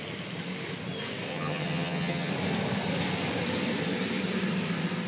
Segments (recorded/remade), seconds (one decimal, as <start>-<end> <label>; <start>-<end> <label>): 0.0-1.3 recorded; 1.3-2.3 remade; 2.3-5.1 recorded